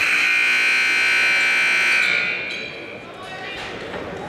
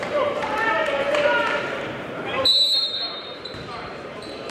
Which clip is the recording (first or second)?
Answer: first